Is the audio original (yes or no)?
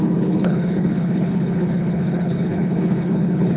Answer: no